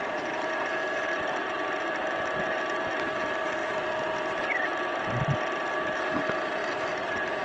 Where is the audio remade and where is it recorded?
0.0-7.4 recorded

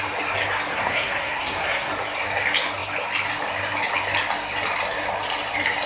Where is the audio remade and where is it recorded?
0.0-0.7 recorded; 0.7-1.9 remade; 1.9-5.9 recorded

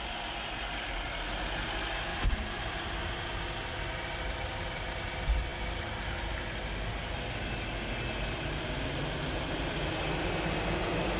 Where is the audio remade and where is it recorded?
0.0-2.1 recorded; 2.1-2.8 remade; 2.8-11.2 recorded

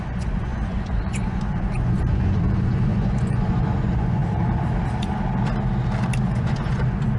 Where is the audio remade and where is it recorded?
0.0-4.2 remade; 4.2-6.2 recorded; 6.2-7.2 remade

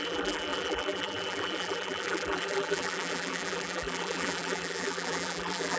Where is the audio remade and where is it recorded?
0.0-5.8 remade

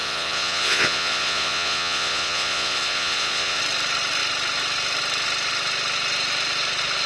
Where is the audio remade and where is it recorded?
0.0-3.6 remade; 3.6-7.1 recorded

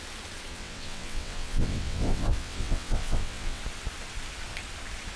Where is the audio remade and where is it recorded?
0.0-0.5 recorded; 0.5-3.6 remade; 3.6-5.2 recorded

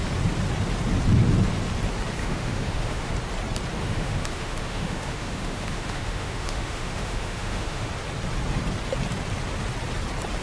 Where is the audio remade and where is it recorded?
0.0-2.2 recorded; 2.2-3.1 remade; 3.1-3.8 recorded; 3.8-7.9 remade; 7.9-10.4 recorded